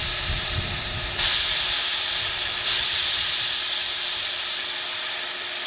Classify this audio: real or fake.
real